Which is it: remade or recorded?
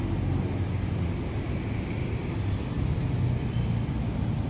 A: recorded